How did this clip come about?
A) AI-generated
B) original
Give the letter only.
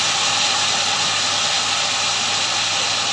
B